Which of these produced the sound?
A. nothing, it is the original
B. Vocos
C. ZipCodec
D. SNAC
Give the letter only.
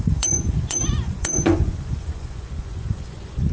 B